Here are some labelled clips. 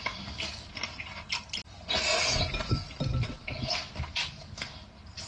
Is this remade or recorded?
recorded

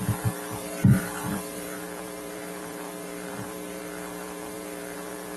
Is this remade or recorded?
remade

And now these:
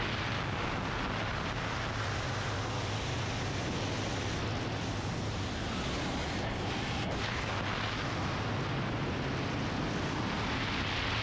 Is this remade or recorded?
recorded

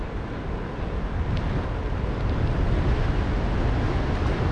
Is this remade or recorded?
recorded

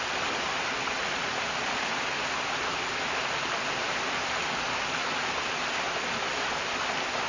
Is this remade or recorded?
recorded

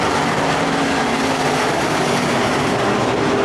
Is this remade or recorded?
recorded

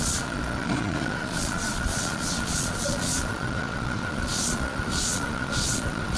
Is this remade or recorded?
remade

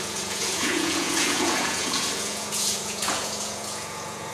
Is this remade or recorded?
remade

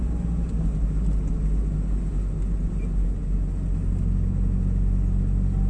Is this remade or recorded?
recorded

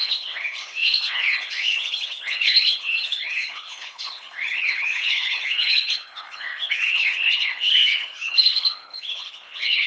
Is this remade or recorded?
remade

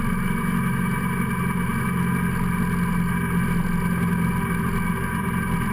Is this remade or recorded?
recorded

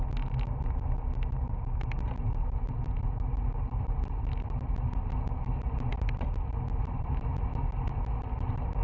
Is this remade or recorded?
recorded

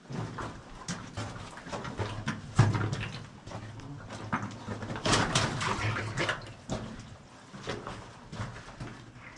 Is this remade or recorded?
recorded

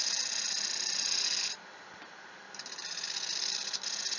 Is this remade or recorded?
recorded